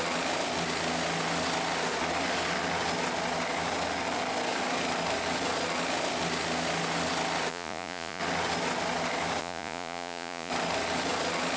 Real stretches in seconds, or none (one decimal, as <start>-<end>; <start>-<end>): 0.0-7.5; 8.2-9.4; 10.5-11.6